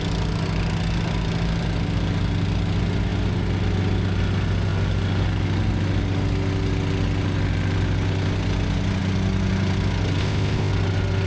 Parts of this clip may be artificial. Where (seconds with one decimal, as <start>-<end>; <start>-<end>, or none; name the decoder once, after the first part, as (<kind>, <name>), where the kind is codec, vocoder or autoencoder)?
10.2-10.7 (codec, ZipCodec)